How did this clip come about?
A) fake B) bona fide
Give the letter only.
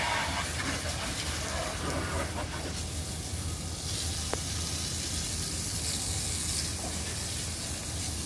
B